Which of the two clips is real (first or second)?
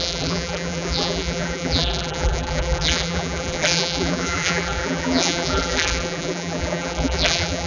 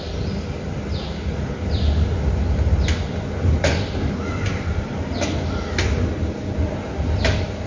second